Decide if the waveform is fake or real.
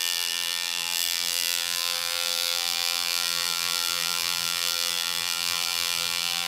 fake